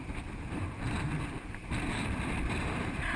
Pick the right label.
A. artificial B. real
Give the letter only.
B